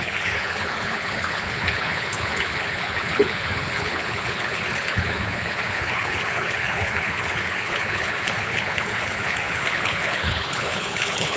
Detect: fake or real fake